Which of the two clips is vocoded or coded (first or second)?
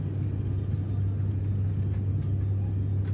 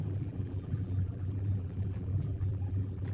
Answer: second